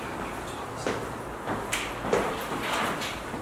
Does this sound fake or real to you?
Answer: real